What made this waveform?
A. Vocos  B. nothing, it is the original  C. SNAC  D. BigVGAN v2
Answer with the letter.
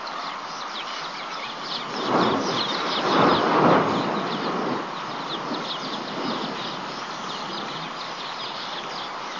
B